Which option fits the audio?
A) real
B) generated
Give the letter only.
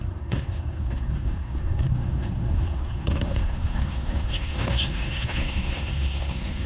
B